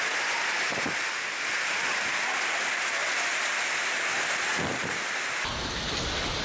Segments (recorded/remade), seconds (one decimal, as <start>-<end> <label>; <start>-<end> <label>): 0.0-6.4 recorded